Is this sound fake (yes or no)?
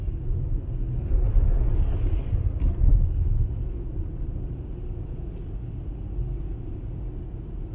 no